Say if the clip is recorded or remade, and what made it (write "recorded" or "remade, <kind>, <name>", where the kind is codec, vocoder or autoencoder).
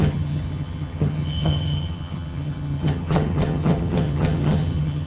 remade, vocoder, HiFi-GAN